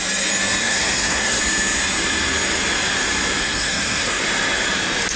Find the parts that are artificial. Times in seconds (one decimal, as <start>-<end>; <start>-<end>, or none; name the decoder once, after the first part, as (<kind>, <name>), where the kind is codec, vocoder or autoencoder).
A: 0.6-1.4 (codec, SNAC); 3.4-4.2